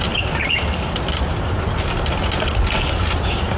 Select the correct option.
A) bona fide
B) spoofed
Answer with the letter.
A